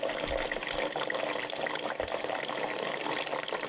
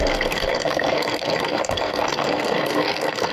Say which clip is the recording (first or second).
first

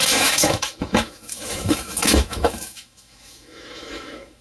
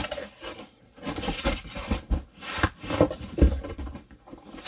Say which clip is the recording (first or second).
second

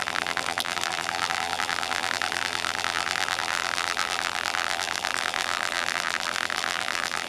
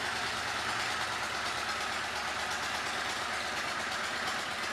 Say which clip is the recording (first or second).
second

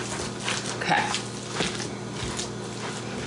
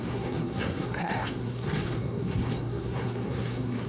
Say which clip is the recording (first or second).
first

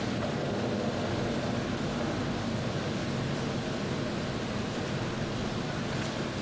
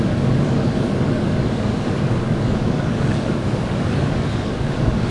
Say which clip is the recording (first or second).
first